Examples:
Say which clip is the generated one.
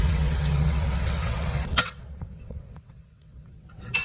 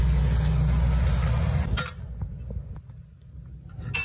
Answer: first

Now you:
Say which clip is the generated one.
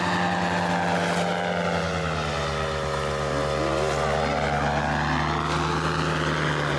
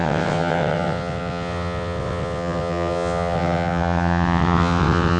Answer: second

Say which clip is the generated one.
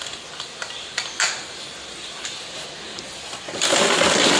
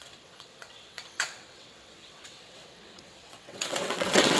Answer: second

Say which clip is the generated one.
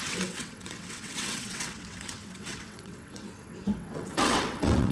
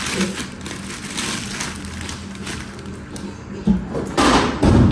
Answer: first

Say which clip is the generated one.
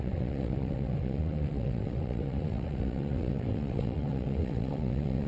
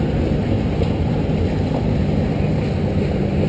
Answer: first